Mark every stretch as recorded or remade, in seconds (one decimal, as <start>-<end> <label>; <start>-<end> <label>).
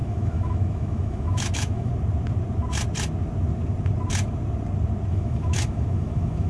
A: 0.0-1.9 remade; 1.9-5.1 recorded; 5.1-6.5 remade